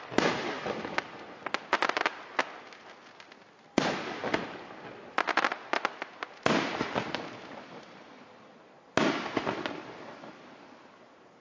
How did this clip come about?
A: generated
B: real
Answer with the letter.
B